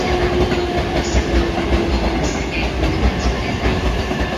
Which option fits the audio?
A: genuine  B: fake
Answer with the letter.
A